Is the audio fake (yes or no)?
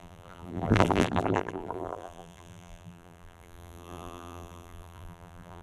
yes